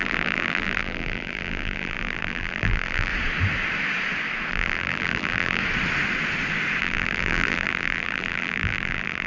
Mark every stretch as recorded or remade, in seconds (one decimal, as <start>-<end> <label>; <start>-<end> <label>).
0.0-3.1 remade; 3.1-4.5 recorded; 4.5-5.6 remade; 5.6-6.8 recorded; 6.8-9.3 remade